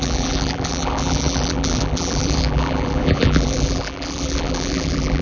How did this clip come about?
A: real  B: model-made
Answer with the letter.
B